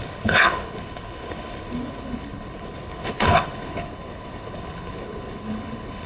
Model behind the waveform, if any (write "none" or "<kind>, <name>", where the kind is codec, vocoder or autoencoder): codec, HILCodec